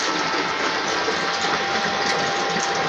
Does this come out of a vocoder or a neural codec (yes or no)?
yes